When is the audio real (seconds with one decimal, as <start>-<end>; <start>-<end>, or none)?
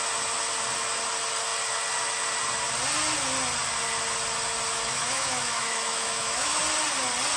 0.0-4.7; 6.6-7.4